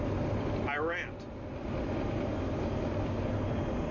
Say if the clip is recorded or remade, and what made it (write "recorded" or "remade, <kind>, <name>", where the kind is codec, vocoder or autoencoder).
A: recorded